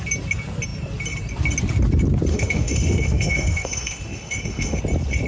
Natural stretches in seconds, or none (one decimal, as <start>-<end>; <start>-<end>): 0.0-2.3; 4.8-5.3